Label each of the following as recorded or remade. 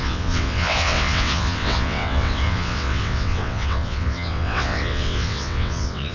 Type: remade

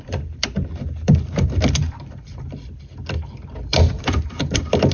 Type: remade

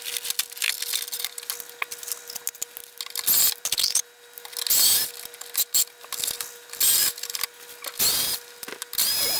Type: recorded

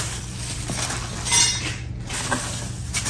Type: recorded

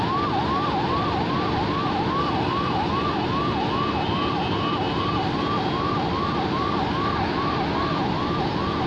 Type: recorded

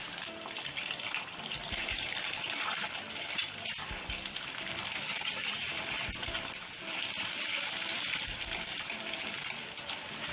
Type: remade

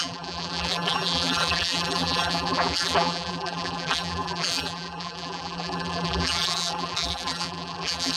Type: remade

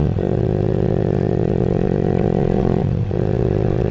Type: remade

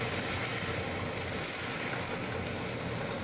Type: recorded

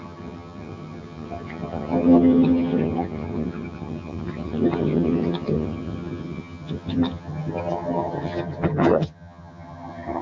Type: remade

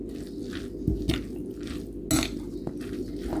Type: recorded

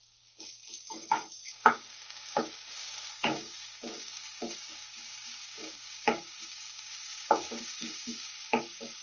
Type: remade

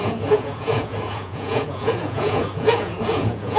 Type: remade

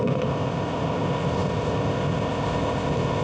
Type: remade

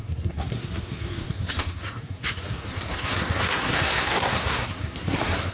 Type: remade